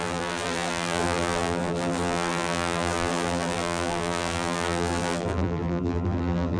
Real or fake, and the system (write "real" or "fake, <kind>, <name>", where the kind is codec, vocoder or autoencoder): fake, vocoder, BigVGAN v2